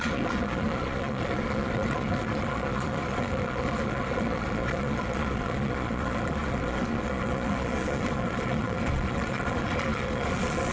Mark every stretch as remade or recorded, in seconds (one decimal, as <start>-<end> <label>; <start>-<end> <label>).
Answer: 0.0-10.7 remade

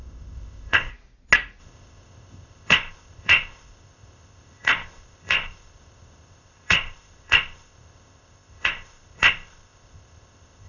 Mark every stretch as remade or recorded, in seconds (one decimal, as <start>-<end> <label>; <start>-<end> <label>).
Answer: 0.0-0.9 remade; 0.9-1.6 recorded; 1.6-10.7 remade

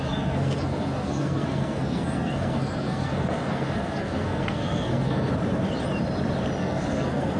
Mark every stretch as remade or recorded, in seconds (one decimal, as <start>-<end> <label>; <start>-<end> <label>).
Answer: 0.0-5.3 remade; 5.3-6.6 recorded; 6.6-7.4 remade